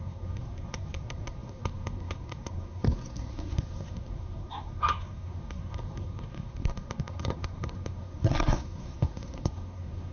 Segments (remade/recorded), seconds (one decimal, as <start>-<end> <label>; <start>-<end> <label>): 0.0-10.1 remade

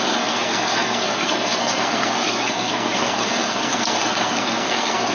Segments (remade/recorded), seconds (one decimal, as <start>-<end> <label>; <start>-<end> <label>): 0.0-5.1 remade

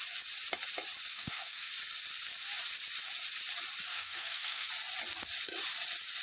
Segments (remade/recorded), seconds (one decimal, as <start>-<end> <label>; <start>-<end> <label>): 0.0-1.1 recorded; 1.1-1.7 remade; 1.7-3.9 recorded; 3.9-4.7 remade; 4.7-6.2 recorded

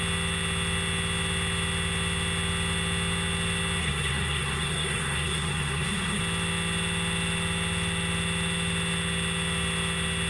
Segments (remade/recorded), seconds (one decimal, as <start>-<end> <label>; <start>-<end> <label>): 0.0-3.8 recorded; 3.8-6.2 remade; 6.2-10.3 recorded

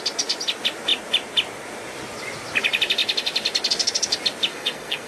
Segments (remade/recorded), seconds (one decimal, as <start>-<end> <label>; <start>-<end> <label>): 0.0-4.5 recorded; 4.5-5.1 remade

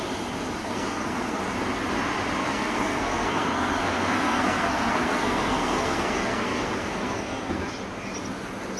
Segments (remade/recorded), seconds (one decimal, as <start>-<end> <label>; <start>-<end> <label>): 0.0-0.6 recorded; 0.6-1.4 remade; 1.4-2.4 recorded; 2.4-7.7 remade; 7.7-8.8 recorded